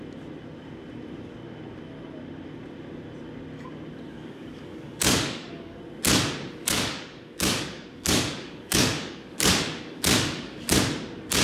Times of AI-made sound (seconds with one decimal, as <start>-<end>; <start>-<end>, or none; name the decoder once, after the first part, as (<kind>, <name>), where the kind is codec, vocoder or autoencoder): 4.1-5.8 (codec, DAC); 6.6-10.8